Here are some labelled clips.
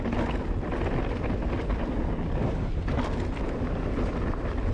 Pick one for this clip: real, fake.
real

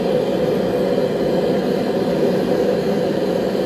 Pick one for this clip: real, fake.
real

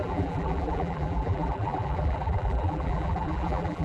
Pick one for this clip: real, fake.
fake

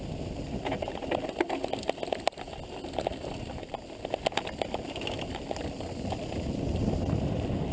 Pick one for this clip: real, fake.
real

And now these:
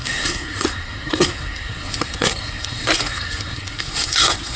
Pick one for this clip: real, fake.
fake